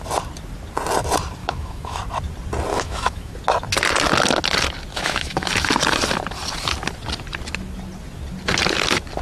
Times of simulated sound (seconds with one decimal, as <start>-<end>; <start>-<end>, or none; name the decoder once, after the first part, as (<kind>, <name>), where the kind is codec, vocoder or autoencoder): 1.4-2.0 (autoencoder, DAC-VAE); 2.7-3.3; 4.9-5.5